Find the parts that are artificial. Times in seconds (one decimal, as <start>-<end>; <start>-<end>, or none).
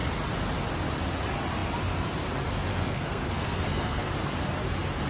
2.7-4.1